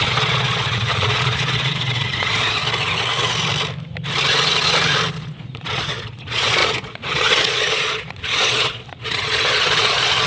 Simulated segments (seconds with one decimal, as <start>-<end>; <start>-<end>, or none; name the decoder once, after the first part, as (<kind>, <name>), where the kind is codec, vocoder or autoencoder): 0.0-2.6 (vocoder, Vocos); 5.1-10.3